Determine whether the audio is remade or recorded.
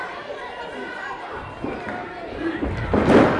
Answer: remade